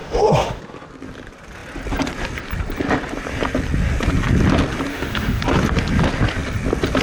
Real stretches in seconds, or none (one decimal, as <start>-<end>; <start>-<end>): 0.6-4.9; 5.4-7.0